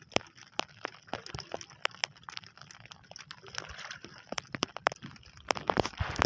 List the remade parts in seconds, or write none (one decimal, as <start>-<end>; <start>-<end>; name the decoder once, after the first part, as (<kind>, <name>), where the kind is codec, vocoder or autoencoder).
none